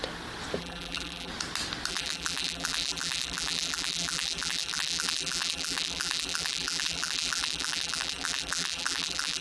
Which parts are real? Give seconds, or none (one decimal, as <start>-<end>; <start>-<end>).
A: 0.0-0.6; 1.3-1.9